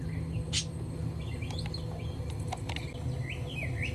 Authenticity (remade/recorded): recorded